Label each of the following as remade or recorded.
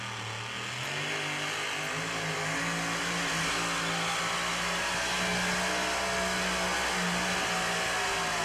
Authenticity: recorded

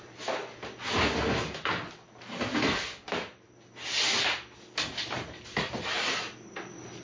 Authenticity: recorded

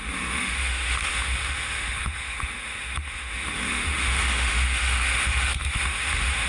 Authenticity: remade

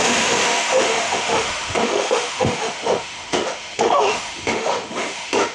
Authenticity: remade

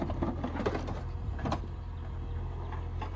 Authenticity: recorded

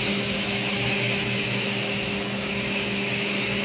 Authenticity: remade